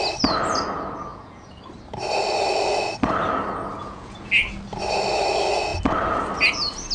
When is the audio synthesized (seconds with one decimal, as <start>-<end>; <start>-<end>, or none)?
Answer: 1.1-1.6; 3.8-4.3

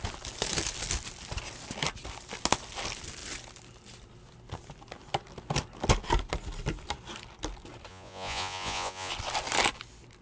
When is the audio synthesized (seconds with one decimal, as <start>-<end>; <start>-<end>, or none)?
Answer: 7.9-9.1

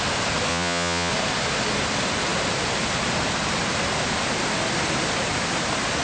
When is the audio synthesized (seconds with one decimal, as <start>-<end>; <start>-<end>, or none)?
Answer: 0.5-1.1

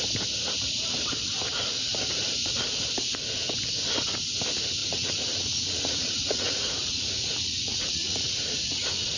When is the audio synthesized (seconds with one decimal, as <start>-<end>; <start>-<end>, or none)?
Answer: 4.8-9.2

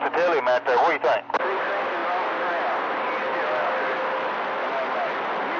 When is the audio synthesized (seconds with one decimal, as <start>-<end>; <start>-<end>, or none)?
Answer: none

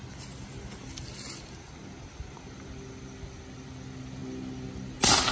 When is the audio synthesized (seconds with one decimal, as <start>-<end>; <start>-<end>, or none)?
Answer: none